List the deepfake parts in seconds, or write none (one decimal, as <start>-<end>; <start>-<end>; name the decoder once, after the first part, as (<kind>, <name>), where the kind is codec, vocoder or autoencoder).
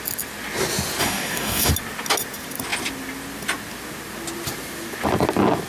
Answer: 1.0-1.7 (codec, DAC)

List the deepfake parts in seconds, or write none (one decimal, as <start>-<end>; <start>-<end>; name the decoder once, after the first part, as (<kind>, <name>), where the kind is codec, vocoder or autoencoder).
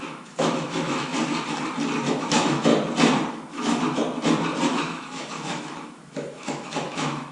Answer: 0.0-1.1 (autoencoder, DAC-VAE); 2.1-2.7; 3.3-4.0; 4.7-7.3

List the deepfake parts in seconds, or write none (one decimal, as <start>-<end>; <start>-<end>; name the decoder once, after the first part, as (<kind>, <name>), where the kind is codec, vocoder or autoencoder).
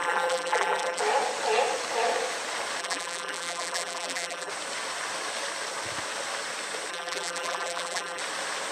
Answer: 0.0-1.0 (vocoder, BigVGAN v2); 2.8-4.5; 6.9-8.2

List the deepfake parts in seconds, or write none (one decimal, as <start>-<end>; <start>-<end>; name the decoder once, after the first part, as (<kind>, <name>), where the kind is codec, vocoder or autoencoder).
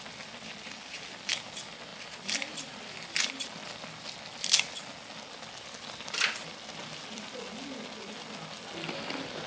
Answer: 1.9-3.3 (vocoder, BigVGAN v2); 6.4-7.5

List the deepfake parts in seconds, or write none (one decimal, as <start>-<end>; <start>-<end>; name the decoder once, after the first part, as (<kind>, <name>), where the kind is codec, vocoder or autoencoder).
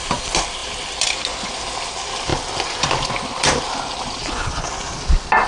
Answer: 4.2-4.7 (codec, HILCodec)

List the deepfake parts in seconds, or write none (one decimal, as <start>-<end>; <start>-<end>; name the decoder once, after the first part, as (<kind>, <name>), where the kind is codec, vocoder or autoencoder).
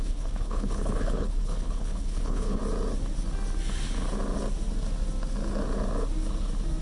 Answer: 0.0-2.6 (codec, HILCodec)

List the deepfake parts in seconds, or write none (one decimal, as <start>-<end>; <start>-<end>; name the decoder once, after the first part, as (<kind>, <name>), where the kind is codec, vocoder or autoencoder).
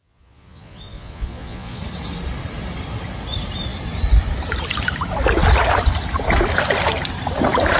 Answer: 0.0-1.8 (vocoder, Vocos)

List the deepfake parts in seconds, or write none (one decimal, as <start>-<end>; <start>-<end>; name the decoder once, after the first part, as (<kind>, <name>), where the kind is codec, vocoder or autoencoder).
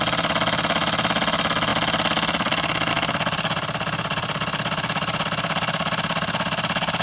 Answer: none